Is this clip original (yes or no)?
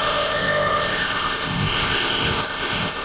no